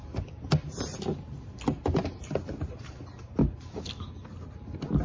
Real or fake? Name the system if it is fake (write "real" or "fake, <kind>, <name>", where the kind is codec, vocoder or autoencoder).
real